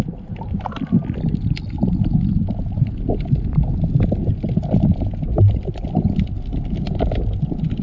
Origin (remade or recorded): recorded